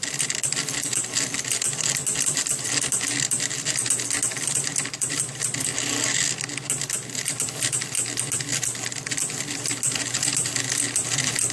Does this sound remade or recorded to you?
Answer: recorded